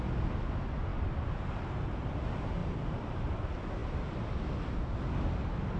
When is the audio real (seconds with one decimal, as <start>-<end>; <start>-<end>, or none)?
0.0-5.8